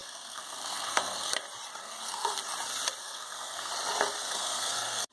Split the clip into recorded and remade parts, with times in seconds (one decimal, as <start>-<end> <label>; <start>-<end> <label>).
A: 0.0-1.3 remade; 1.3-1.8 recorded; 1.8-2.4 remade; 2.4-3.0 recorded; 3.0-3.7 remade; 3.7-4.2 recorded; 4.2-5.1 remade